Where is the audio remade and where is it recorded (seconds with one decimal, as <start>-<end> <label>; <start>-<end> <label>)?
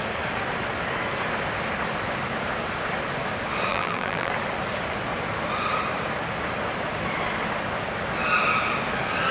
0.0-3.7 recorded; 3.7-4.3 remade; 4.3-9.3 recorded